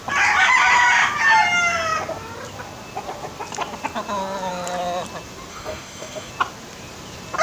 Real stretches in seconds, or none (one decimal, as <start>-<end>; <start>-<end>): 0.0-5.5; 6.3-7.4